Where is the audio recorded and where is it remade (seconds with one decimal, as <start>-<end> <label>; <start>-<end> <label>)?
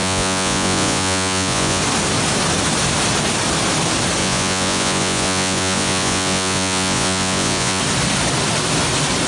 0.0-1.8 remade; 1.8-4.2 recorded; 4.2-7.8 remade; 7.8-9.3 recorded